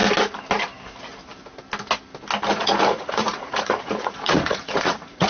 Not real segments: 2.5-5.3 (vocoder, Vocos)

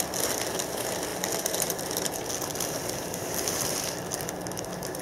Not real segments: none

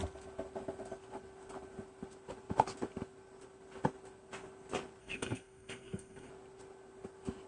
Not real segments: 5.0-6.3 (codec, SNAC)

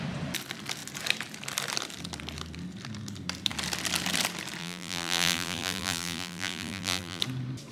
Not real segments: 4.6-7.2 (vocoder, BigVGAN v2)

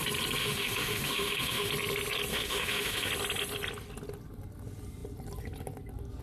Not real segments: 0.4-1.7 (autoencoder, DAC-VAE); 2.3-3.1

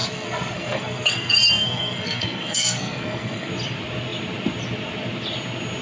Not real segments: 0.0-3.5 (codec, SNAC)

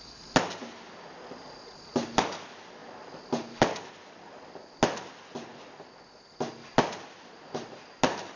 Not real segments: none